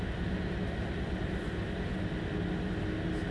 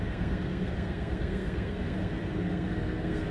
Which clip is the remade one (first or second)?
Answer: second